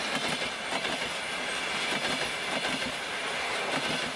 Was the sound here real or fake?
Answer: real